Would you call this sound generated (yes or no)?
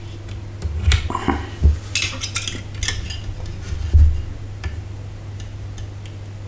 no